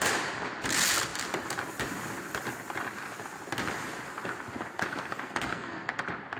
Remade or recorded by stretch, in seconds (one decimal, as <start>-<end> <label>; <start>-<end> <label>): 0.0-4.7 recorded; 4.7-5.9 remade; 5.9-6.4 recorded